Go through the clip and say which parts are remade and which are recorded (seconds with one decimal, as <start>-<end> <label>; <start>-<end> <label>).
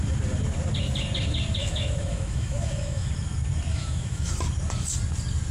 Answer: 0.0-1.6 recorded; 1.6-3.1 remade; 3.1-3.7 recorded; 3.7-4.3 remade; 4.3-5.5 recorded